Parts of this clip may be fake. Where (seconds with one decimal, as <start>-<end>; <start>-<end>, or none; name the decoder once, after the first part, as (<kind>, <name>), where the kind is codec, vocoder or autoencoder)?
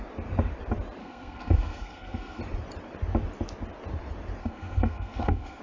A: 1.0-2.4 (codec, SNAC); 4.4-5.6